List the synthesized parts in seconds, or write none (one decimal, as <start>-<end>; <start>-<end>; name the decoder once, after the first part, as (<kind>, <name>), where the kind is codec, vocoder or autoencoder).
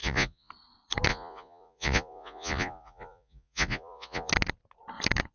0.0-0.5 (vocoder, Vocos); 1.1-4.3